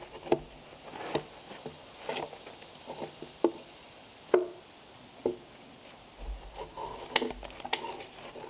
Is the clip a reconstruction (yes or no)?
no